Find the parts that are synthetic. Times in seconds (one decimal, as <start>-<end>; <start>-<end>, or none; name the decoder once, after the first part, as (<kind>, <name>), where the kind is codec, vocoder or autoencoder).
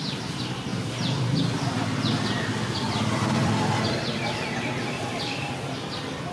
0.0-6.3 (vocoder, BigVGAN v2)